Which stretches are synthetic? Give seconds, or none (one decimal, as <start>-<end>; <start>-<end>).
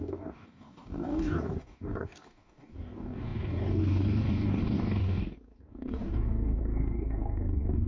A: 0.0-7.9